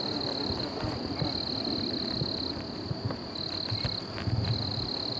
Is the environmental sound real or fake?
real